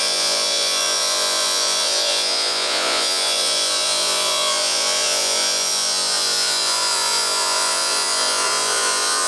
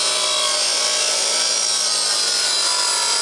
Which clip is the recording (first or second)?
second